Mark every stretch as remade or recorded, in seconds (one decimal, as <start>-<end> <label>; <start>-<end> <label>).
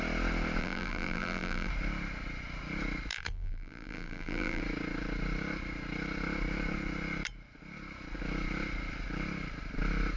0.0-0.6 recorded; 0.6-1.7 remade; 1.7-3.1 recorded; 3.1-4.6 remade; 4.6-10.2 recorded